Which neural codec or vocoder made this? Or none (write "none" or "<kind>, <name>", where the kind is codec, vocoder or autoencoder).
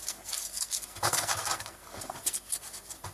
codec, SNAC